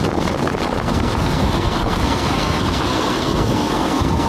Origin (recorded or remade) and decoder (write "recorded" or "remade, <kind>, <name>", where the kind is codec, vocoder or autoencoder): remade, codec, SNAC